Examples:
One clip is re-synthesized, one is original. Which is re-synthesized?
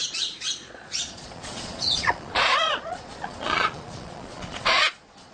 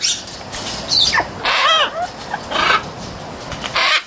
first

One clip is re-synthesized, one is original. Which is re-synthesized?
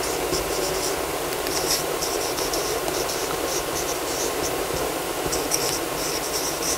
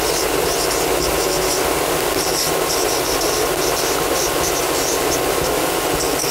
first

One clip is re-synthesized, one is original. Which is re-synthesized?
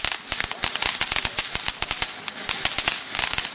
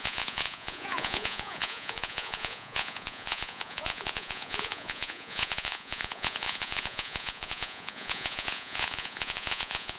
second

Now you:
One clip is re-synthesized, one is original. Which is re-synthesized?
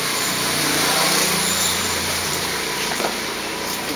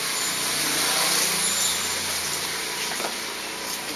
first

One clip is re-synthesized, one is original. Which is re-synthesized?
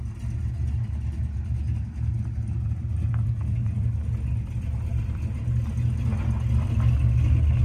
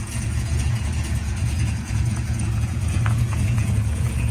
second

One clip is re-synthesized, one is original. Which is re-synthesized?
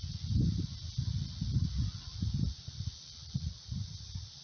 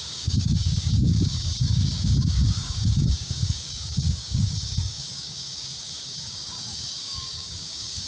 second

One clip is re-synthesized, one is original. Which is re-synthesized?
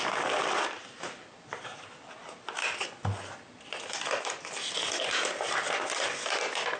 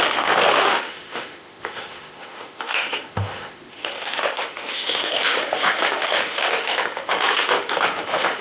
second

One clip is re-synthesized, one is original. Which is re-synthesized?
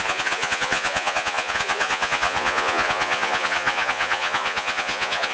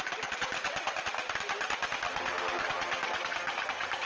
first